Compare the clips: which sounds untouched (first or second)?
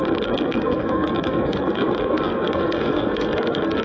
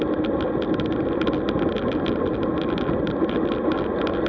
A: second